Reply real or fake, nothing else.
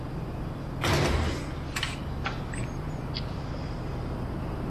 real